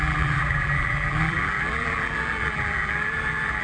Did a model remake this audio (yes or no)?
yes